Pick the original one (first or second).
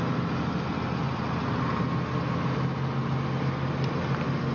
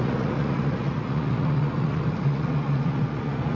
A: first